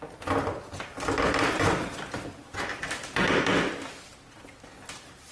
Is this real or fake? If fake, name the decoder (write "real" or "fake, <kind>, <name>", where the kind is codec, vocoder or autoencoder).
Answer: real